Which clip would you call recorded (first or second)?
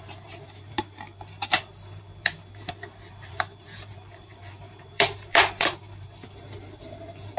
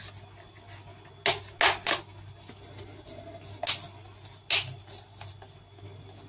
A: second